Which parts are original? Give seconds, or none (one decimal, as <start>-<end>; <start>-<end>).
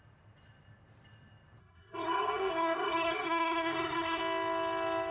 0.0-1.6; 4.2-5.1